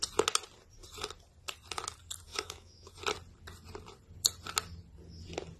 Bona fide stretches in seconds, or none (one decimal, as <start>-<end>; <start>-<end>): 0.0-2.3; 2.9-5.6